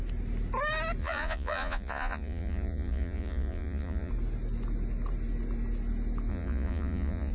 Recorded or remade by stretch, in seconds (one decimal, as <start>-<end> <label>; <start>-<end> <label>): 0.0-1.0 recorded; 1.0-4.1 remade; 4.1-6.3 recorded; 6.3-7.3 remade